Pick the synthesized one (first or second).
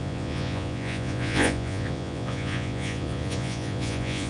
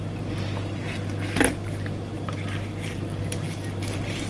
first